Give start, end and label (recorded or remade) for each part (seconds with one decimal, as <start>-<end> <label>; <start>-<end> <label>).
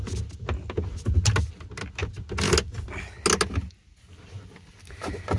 0.0-5.4 recorded